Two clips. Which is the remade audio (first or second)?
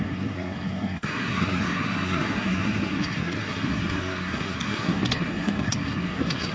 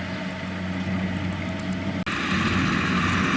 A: first